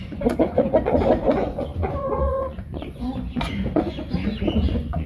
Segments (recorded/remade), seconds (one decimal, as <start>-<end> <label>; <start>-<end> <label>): 0.0-5.1 remade